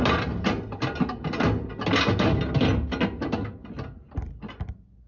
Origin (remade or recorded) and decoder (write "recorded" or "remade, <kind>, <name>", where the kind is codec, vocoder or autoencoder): recorded